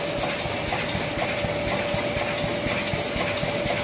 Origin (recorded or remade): recorded